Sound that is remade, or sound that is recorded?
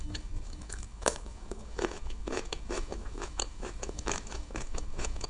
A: remade